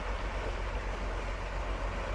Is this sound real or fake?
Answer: real